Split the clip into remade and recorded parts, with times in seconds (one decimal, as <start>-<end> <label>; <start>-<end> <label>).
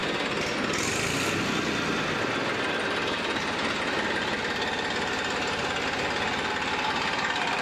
0.0-2.2 recorded; 2.2-7.6 remade